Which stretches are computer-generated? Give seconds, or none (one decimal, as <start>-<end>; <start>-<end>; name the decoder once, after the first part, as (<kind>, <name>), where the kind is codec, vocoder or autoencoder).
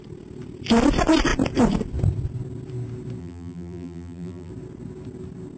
3.2-4.5 (vocoder, BigVGAN v2)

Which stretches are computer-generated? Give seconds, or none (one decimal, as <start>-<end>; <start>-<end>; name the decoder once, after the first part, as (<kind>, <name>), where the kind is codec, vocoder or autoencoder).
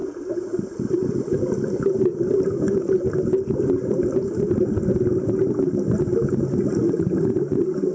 none